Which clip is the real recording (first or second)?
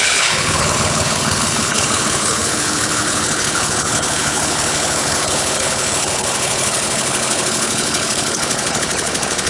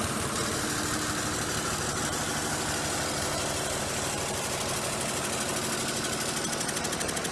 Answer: second